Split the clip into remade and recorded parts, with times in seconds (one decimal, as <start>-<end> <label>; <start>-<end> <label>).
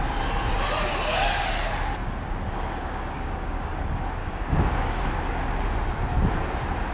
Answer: 0.0-2.0 recorded; 2.0-3.8 remade; 3.8-4.2 recorded; 4.2-5.0 remade; 5.0-6.9 recorded